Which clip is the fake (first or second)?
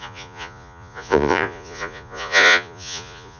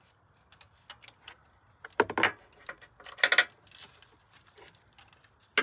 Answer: first